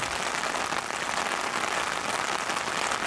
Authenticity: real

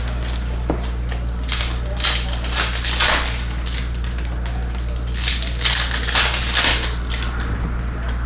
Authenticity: real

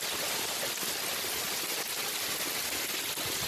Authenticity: real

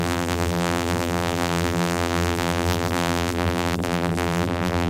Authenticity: fake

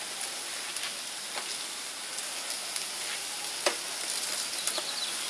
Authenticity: real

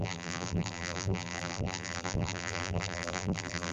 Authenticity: fake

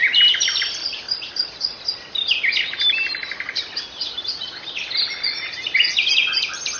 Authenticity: real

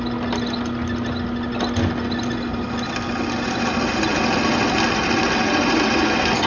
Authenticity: real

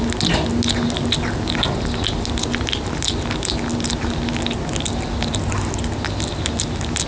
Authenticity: real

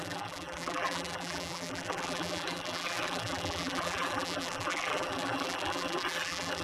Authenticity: fake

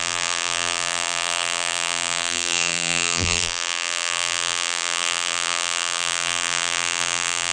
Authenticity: fake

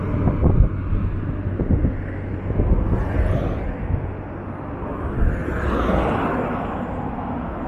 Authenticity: real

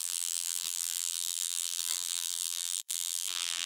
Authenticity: fake